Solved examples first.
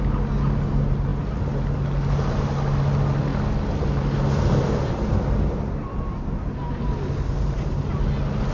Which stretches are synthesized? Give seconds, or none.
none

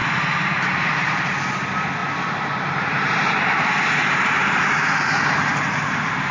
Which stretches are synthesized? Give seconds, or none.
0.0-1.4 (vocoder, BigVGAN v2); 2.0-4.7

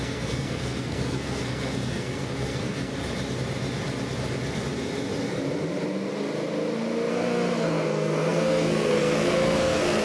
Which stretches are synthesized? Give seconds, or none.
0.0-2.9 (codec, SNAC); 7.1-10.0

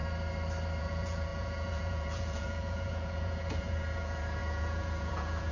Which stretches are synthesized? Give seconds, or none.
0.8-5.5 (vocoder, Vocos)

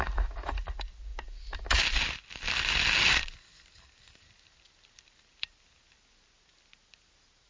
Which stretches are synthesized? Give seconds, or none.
none

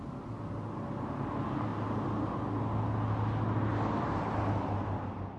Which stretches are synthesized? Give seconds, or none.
none

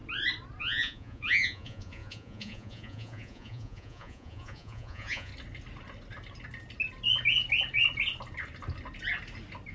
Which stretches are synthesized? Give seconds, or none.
0.6-5.3 (vocoder, Vocos)

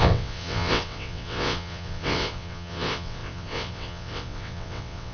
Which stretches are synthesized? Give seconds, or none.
0.0-5.1 (vocoder, WaveNeXt)